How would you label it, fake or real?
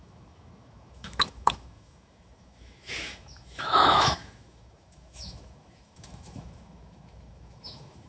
fake